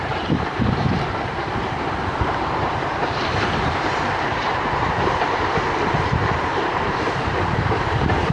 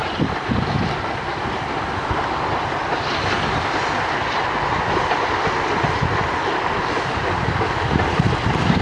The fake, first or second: first